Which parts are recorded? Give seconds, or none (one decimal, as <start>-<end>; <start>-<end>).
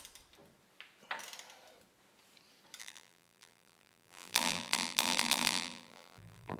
0.0-2.8